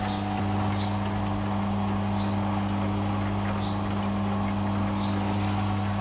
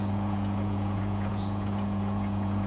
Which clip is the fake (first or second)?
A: second